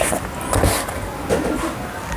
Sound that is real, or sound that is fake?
real